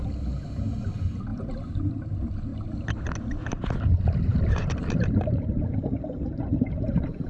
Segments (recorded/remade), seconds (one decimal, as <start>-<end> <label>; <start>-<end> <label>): 0.0-1.3 recorded; 1.3-1.8 remade; 1.8-4.3 recorded; 4.3-7.3 remade